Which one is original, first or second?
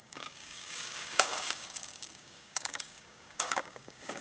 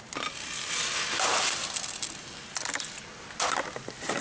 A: second